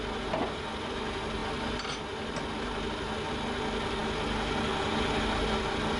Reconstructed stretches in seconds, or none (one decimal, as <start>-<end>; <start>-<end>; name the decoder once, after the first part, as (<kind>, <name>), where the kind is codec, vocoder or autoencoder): none